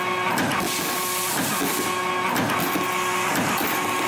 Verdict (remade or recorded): recorded